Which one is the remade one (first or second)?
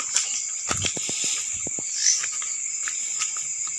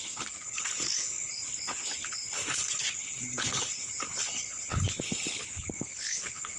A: second